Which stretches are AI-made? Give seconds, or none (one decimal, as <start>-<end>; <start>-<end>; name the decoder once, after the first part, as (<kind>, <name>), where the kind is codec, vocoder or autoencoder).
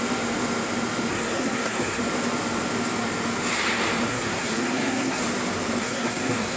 1.1-2.0 (codec, SNAC); 4.1-5.2; 5.8-6.6